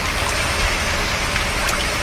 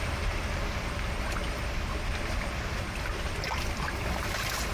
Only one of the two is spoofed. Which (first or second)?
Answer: second